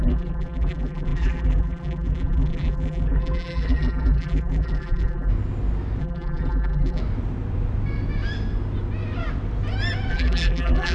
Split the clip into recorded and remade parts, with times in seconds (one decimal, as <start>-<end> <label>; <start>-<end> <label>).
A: 0.0-5.3 remade; 5.3-6.0 recorded; 6.0-7.0 remade; 7.0-10.1 recorded; 10.1-10.9 remade